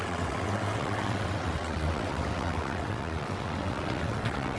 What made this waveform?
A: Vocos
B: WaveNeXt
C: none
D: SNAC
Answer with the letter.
B